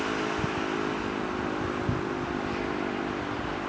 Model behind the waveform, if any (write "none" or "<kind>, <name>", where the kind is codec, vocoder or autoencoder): none